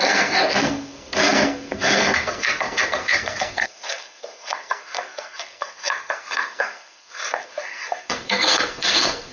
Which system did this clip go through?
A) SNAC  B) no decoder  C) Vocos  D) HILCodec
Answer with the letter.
A